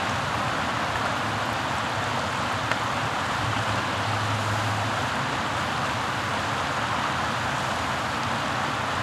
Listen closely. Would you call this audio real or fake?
real